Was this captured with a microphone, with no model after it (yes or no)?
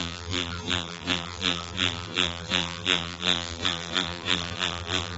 no